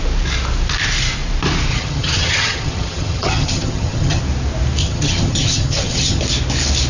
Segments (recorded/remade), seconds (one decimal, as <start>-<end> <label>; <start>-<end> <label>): 0.0-1.7 recorded; 1.7-4.2 remade; 4.2-4.8 recorded; 4.8-6.2 remade; 6.2-6.9 recorded